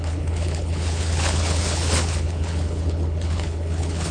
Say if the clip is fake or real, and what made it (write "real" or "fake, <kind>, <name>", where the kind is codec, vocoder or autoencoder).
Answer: fake, codec, HILCodec